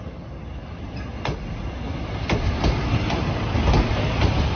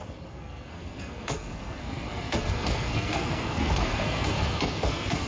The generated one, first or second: second